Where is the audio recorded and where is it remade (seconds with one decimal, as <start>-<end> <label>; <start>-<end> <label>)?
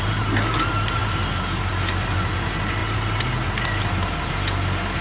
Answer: 0.0-5.0 recorded